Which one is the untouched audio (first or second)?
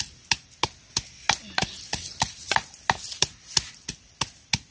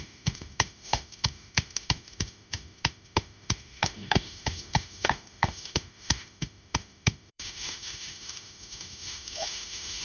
first